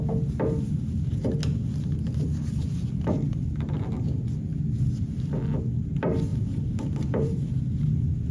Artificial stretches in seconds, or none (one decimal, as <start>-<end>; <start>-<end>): 6.3-7.6